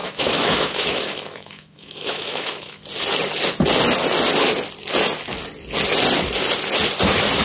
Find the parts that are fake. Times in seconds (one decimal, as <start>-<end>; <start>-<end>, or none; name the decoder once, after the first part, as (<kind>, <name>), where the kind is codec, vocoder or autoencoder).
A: 0.0-2.8 (autoencoder, DAC-VAE)